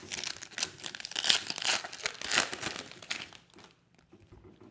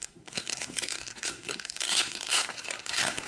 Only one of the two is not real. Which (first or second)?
second